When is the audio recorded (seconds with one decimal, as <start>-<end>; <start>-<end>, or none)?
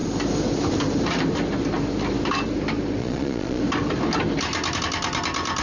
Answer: 0.0-3.0; 3.6-5.6